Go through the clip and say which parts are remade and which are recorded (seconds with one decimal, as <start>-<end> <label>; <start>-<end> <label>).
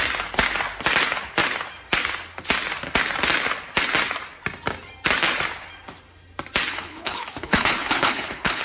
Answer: 0.0-6.7 recorded; 6.7-8.6 remade